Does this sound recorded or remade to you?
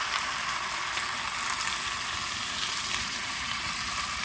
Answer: recorded